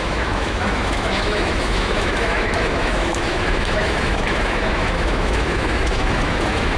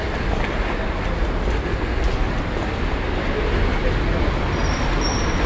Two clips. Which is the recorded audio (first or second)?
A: second